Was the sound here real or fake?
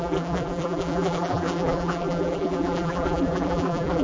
fake